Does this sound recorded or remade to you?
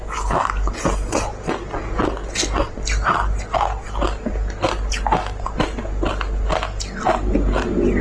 recorded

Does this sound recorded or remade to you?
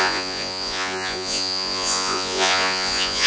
remade